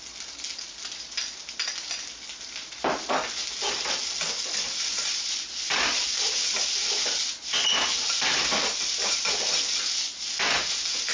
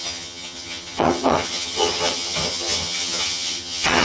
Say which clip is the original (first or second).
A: first